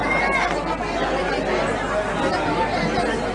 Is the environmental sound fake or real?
real